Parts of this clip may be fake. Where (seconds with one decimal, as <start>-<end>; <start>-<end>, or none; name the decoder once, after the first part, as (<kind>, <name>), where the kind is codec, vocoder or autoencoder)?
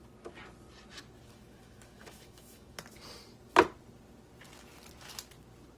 1.3-2.8 (autoencoder, DAC-VAE)